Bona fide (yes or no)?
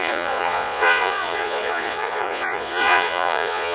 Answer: no